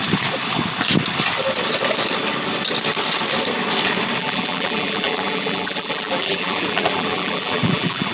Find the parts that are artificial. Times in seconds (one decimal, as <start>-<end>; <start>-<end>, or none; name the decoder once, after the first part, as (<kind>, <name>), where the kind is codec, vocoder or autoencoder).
4.2-8.1 (vocoder, BigVGAN v2)